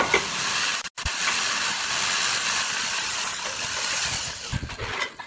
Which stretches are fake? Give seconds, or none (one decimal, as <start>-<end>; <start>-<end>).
none